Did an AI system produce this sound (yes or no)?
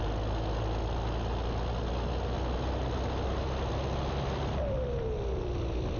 no